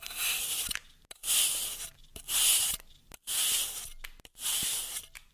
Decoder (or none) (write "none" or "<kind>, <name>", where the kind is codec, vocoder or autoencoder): none